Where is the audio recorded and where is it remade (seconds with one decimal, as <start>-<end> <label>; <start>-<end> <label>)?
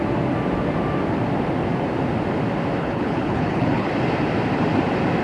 0.0-2.8 recorded; 2.8-3.9 remade; 3.9-5.2 recorded